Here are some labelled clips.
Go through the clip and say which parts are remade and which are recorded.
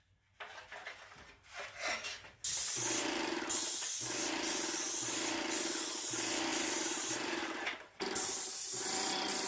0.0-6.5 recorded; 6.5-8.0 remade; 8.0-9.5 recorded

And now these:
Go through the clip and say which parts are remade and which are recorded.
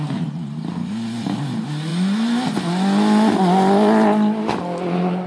0.0-5.3 recorded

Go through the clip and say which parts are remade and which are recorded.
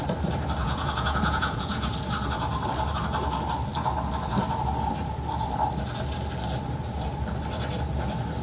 0.0-0.6 recorded; 0.6-1.9 remade; 1.9-8.4 recorded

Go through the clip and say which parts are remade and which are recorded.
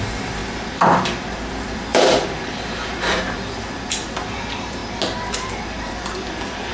0.0-0.4 remade; 0.4-0.9 recorded; 0.9-4.8 remade; 4.8-5.3 recorded; 5.3-6.7 remade